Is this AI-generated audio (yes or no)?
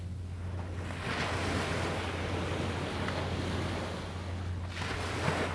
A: no